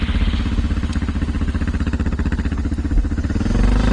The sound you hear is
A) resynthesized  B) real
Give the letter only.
B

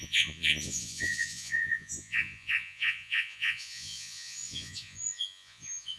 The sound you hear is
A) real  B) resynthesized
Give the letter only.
B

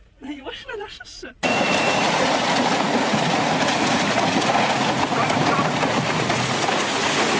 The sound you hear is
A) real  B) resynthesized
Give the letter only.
B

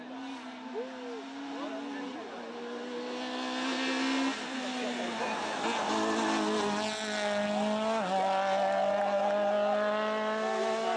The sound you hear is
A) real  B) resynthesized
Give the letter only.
A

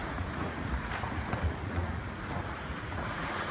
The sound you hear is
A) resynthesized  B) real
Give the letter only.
A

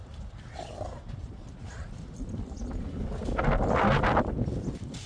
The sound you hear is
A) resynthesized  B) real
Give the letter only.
B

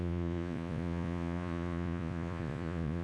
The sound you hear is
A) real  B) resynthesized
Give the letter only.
B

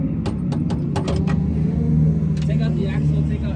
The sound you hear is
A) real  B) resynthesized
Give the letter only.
A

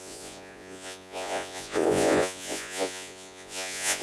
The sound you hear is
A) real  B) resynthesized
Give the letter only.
B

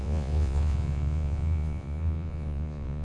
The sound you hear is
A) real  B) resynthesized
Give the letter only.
B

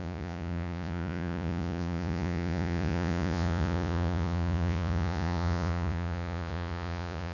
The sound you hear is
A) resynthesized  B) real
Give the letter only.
A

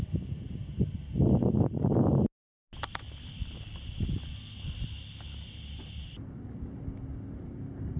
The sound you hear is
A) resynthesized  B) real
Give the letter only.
B